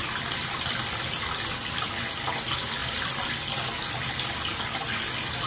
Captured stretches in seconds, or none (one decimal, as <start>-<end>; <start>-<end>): 1.9-2.8; 3.3-5.5